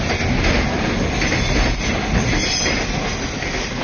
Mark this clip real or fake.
real